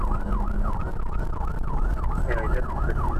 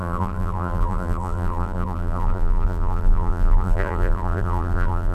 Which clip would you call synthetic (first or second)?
second